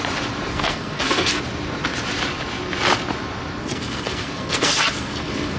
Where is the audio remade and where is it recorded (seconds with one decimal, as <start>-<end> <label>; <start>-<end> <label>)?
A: 0.0-0.5 recorded; 0.5-1.4 remade; 1.4-3.6 recorded; 3.6-5.6 remade